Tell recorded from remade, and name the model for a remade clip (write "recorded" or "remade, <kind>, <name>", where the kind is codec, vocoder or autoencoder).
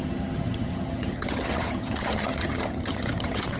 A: remade, vocoder, HiFi-GAN